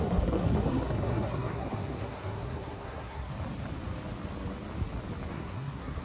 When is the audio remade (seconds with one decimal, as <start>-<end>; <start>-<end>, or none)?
0.0-3.3; 5.3-6.0